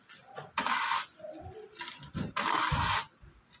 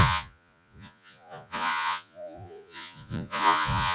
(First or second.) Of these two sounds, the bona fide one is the first